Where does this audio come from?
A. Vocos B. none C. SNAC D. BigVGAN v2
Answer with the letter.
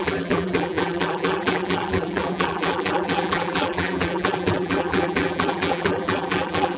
D